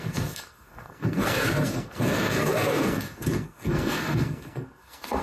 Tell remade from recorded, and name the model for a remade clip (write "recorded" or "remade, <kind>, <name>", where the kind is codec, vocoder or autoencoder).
remade, codec, SNAC